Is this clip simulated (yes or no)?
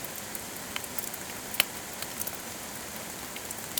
no